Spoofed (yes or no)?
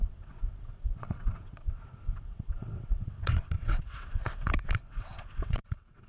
yes